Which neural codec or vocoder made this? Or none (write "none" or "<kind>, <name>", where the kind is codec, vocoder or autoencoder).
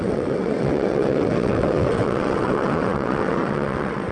vocoder, WaveNeXt